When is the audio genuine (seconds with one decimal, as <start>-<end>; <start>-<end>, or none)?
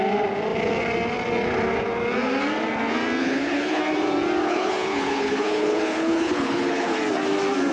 0.0-3.2; 3.8-4.4; 7.0-7.7